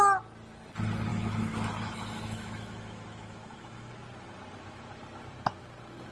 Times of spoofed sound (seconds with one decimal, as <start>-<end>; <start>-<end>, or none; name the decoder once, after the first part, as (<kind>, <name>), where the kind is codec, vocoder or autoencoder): 1.1-3.9 (autoencoder, DAC-VAE)